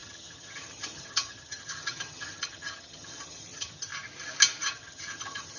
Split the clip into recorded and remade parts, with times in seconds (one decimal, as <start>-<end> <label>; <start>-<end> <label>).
0.0-3.9 remade; 3.9-4.6 recorded; 4.6-5.6 remade